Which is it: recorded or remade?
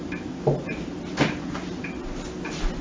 recorded